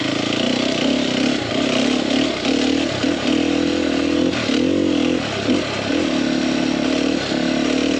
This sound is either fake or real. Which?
real